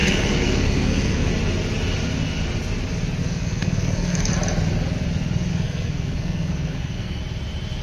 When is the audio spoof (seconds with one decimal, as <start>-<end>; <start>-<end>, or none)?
0.0-1.3; 3.2-4.3; 5.5-7.2